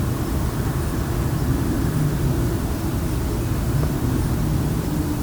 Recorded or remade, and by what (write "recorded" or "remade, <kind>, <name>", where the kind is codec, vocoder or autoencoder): remade, vocoder, BigVGAN v2